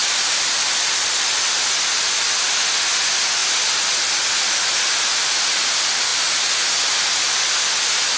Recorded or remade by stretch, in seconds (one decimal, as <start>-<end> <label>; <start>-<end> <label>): 0.0-1.5 remade; 1.5-8.2 recorded